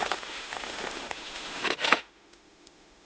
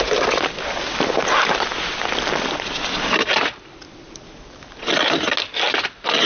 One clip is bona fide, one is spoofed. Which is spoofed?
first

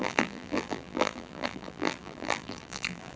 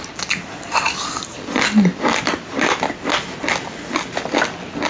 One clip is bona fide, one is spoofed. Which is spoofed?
first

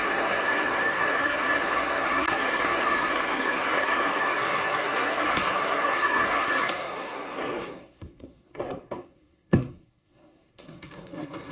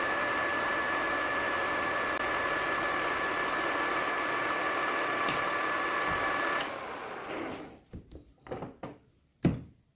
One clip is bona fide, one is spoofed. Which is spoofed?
first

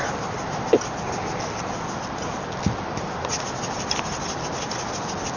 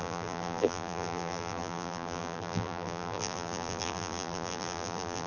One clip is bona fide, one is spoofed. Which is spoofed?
second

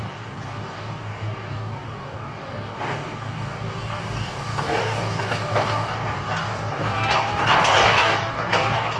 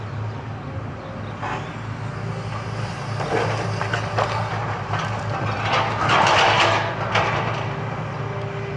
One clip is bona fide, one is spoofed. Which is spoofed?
first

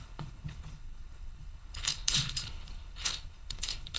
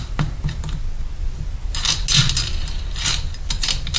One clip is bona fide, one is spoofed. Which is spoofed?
first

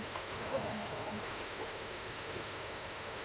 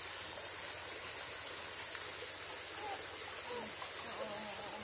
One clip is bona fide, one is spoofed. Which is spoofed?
first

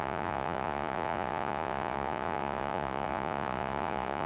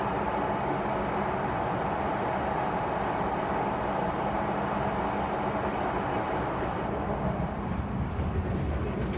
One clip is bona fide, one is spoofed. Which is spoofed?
first